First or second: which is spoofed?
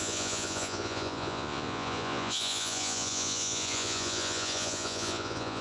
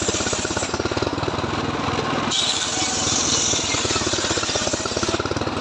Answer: first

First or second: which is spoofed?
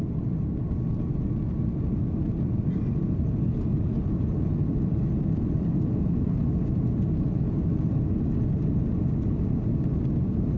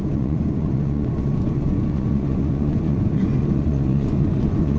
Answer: second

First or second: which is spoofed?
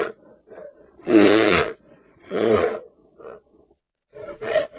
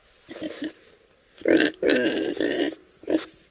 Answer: first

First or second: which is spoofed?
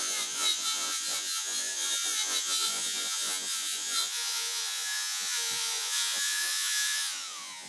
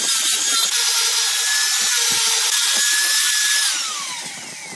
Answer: first